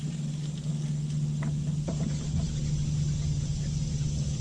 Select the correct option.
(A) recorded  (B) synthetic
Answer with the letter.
A